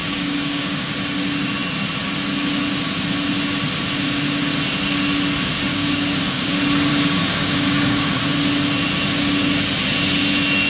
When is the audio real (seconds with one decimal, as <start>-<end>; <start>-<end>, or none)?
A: 0.9-5.7; 6.5-6.9; 8.2-10.7